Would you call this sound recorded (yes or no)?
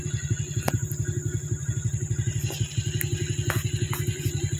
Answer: yes